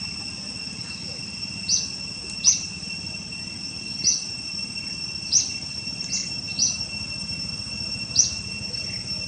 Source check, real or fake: real